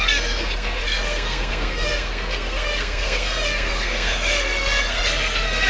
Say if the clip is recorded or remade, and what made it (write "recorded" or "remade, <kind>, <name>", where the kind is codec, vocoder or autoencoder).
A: remade, codec, SNAC